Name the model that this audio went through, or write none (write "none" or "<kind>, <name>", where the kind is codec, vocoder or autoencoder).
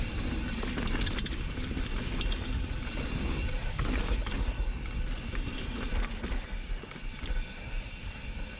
none